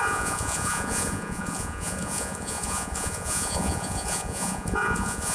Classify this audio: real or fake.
fake